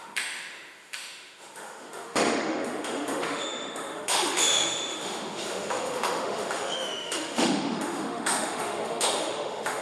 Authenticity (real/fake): fake